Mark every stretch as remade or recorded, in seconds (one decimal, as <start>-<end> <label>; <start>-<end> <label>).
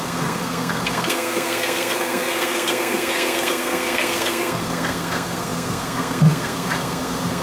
0.0-7.4 remade